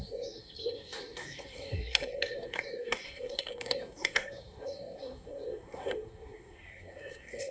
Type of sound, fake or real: fake